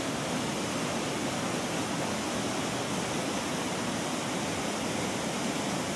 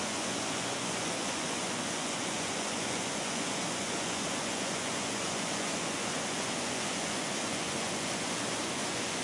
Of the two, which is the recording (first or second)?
first